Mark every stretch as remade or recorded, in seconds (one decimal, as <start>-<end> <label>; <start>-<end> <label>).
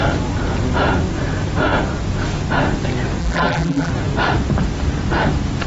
0.0-3.2 recorded; 3.2-3.9 remade; 3.9-5.7 recorded